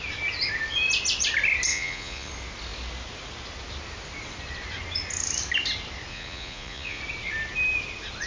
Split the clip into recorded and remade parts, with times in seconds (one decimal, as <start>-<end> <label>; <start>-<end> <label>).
0.0-1.7 recorded; 1.7-2.3 remade; 2.3-6.1 recorded; 6.1-7.0 remade; 7.0-8.3 recorded